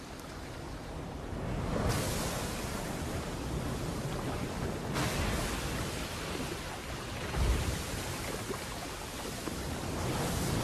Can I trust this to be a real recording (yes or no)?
yes